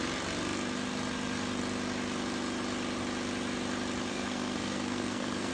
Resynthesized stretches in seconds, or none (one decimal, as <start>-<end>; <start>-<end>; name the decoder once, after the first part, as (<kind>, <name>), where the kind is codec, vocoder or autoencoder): 4.1-5.5 (codec, SNAC)